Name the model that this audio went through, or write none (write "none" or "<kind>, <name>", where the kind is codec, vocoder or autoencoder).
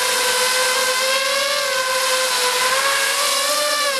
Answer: none